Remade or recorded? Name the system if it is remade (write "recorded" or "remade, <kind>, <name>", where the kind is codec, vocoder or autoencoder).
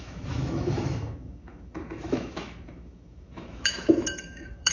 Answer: remade, autoencoder, DAC-VAE